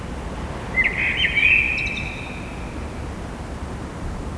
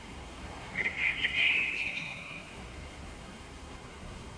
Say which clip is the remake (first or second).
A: second